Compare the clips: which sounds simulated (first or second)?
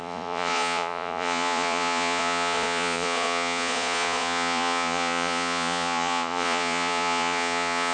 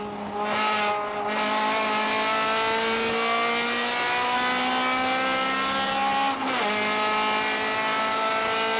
first